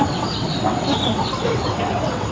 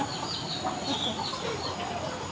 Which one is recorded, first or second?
second